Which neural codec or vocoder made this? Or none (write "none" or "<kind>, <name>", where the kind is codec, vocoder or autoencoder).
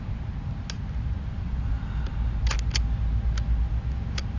none